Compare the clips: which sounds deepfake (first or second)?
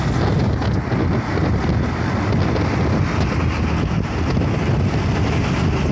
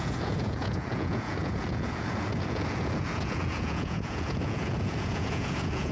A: second